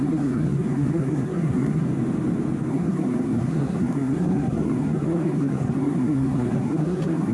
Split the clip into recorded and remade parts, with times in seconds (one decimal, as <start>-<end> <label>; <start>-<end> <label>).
0.0-1.9 remade; 1.9-2.7 recorded; 2.7-7.3 remade